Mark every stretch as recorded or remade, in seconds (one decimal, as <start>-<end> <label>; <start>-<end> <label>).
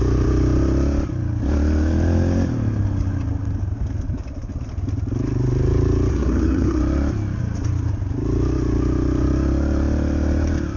0.0-6.1 recorded; 6.1-6.8 remade; 6.8-10.8 recorded